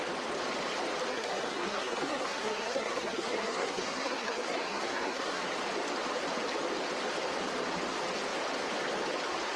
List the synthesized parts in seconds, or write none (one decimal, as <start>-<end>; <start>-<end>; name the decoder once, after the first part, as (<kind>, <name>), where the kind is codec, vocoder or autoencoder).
1.1-5.4 (codec, SNAC)